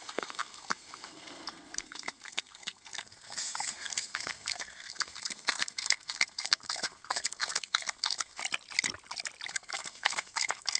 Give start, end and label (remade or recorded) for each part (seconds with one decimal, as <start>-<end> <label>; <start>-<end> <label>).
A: 0.0-8.4 remade; 8.4-9.5 recorded; 9.5-10.8 remade